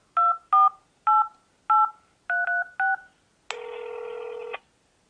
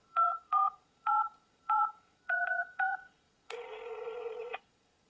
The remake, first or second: second